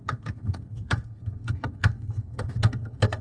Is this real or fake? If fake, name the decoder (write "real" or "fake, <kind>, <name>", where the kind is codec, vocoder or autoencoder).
fake, codec, SNAC